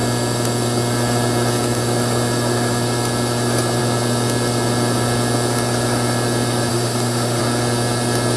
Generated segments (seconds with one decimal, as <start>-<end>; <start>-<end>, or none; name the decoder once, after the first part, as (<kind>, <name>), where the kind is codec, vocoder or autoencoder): 6.7-7.4 (autoencoder, DAC-VAE)